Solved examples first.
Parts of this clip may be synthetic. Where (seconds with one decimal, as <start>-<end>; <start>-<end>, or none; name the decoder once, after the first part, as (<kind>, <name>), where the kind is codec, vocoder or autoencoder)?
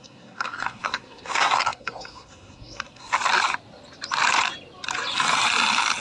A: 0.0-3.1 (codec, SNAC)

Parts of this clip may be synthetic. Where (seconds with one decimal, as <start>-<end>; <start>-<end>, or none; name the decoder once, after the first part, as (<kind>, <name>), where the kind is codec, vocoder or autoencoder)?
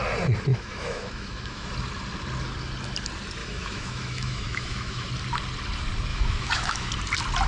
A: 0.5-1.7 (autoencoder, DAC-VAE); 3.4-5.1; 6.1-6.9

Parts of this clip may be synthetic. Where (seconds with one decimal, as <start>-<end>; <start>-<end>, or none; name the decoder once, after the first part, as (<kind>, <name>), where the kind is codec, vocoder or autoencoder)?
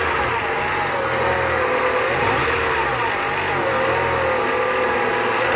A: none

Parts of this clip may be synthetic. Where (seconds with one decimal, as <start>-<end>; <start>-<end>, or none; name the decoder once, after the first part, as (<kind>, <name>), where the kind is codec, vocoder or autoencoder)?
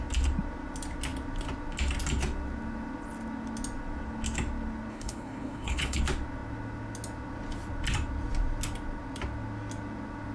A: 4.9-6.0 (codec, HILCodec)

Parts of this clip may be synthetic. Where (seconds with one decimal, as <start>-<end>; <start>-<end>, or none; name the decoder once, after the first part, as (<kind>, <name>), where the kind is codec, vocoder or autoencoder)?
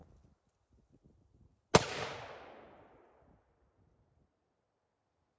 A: none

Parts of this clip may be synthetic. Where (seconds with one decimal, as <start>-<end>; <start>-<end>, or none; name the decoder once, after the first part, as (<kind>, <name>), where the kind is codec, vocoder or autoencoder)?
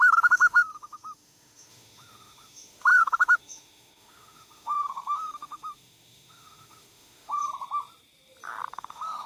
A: 0.0-7.4 (autoencoder, DAC-VAE); 8.7-9.3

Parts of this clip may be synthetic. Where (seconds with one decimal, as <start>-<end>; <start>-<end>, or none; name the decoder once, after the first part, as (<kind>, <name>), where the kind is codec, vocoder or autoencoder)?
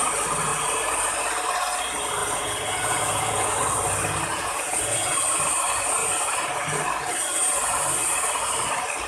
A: 2.2-3.6 (vocoder, Vocos); 4.3-5.1